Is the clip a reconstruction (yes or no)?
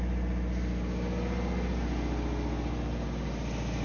no